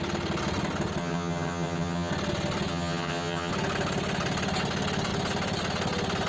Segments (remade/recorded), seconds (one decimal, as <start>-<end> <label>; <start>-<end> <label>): 0.0-1.0 recorded; 1.0-2.1 remade; 2.1-2.7 recorded; 2.7-3.5 remade; 3.5-6.3 recorded

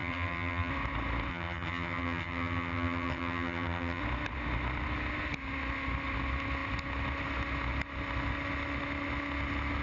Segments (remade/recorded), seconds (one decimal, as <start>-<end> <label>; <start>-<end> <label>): 0.0-0.7 remade; 0.7-1.3 recorded; 1.3-4.0 remade; 4.0-9.8 recorded

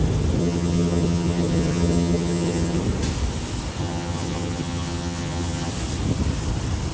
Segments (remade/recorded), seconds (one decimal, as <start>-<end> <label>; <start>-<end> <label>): 0.0-0.4 recorded; 0.4-2.8 remade; 2.8-3.8 recorded; 3.8-5.7 remade; 5.7-6.9 recorded

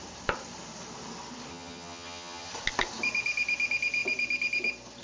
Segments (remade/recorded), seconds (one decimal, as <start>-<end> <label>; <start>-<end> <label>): 0.0-1.5 recorded; 1.5-2.5 remade; 2.5-5.0 recorded